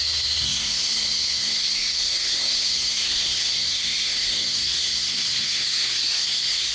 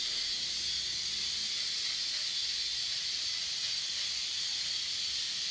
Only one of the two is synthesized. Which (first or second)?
first